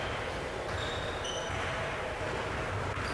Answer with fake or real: real